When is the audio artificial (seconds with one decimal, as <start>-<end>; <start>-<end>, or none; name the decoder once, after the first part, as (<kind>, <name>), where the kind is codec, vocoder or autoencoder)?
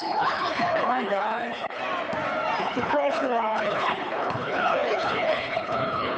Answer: 0.0-1.8 (codec, HILCodec); 2.6-6.2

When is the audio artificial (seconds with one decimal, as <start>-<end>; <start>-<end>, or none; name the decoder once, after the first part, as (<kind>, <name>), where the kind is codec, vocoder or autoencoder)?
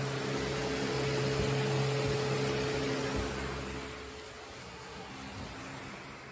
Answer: 4.6-5.1 (codec, SNAC)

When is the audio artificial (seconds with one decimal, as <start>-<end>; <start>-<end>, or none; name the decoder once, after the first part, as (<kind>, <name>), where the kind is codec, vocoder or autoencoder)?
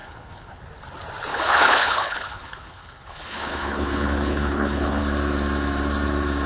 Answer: 0.0-0.6 (codec, HILCodec); 1.3-5.0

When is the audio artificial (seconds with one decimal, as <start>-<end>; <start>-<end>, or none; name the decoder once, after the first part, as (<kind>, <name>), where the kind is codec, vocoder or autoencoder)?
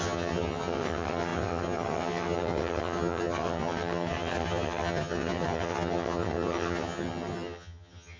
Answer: 0.0-8.2 (vocoder, HiFi-GAN)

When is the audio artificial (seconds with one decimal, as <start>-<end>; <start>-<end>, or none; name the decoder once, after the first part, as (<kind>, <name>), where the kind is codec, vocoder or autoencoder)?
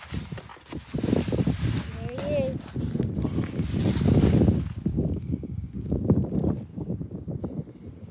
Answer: 4.9-6.3 (codec, DAC); 6.7-7.4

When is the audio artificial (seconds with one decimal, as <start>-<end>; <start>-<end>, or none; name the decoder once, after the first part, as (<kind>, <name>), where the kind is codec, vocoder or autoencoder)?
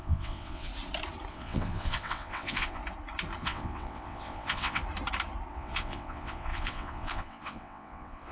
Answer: 0.0-0.7 (vocoder, WaveNeXt); 1.3-2.8; 3.4-4.8; 5.5-8.3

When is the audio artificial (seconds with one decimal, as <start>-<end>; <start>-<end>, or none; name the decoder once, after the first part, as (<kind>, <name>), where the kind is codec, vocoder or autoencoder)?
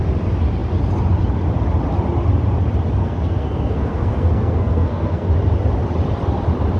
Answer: 3.0-5.3 (codec, SNAC)